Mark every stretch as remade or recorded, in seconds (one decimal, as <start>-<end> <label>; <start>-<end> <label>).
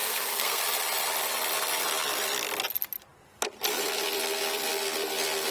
0.0-0.6 remade; 0.6-5.5 recorded